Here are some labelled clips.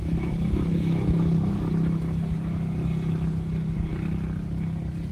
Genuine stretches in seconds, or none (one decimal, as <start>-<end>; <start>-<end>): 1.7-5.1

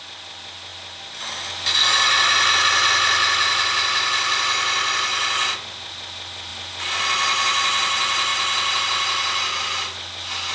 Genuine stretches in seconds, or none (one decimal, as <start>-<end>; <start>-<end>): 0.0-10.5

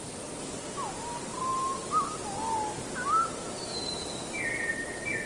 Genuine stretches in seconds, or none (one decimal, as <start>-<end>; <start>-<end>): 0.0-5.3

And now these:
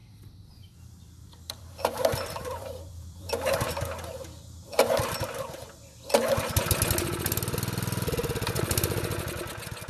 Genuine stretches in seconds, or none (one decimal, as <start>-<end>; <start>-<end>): 3.7-8.2; 9.4-9.9

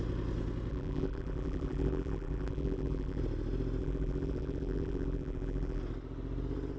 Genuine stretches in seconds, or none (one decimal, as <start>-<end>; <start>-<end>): 0.0-0.7; 3.2-3.8; 5.8-6.8